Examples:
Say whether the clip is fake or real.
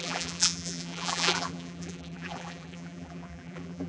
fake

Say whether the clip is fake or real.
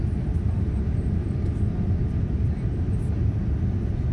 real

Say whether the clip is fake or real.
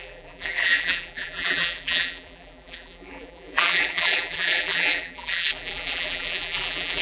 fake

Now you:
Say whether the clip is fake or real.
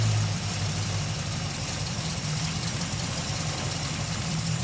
fake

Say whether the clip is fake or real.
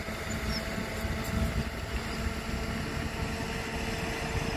real